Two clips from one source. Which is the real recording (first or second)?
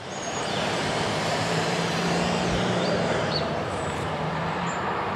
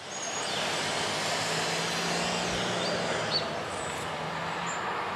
second